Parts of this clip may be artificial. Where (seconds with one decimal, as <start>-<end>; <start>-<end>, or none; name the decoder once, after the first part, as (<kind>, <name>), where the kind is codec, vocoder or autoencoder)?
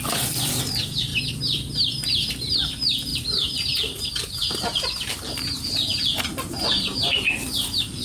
none